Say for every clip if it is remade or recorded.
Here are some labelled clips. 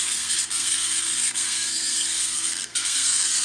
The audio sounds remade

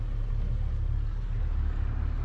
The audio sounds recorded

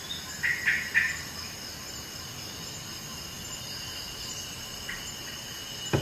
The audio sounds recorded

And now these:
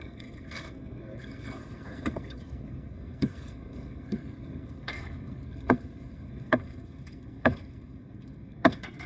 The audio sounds remade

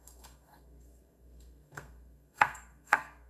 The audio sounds remade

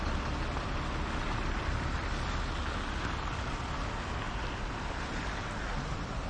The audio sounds recorded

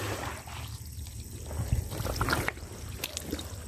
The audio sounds recorded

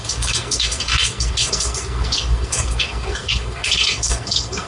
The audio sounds remade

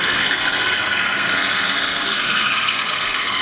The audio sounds remade